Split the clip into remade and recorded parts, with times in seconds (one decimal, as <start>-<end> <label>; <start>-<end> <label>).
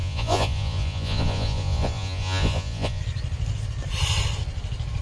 0.0-3.0 remade; 3.0-5.0 recorded